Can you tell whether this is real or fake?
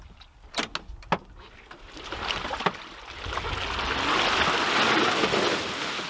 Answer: real